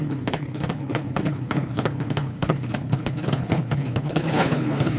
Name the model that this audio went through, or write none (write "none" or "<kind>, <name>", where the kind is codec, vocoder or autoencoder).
codec, HILCodec